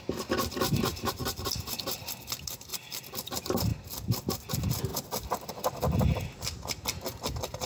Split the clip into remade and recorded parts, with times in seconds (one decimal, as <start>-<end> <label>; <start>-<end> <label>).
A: 0.0-0.9 recorded; 0.9-1.8 remade; 1.8-2.7 recorded; 2.7-3.3 remade; 3.3-4.9 recorded; 4.9-5.5 remade; 5.5-7.7 recorded